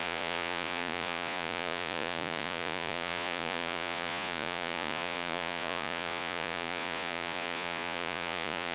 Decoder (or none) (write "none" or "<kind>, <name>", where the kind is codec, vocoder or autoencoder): vocoder, Vocos